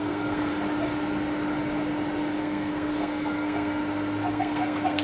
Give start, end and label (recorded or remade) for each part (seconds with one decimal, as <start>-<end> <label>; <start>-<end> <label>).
0.0-0.5 remade; 0.5-2.4 recorded; 2.4-3.8 remade; 3.8-4.3 recorded; 4.3-5.0 remade